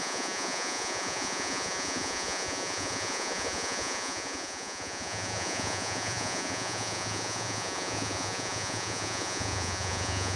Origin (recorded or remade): remade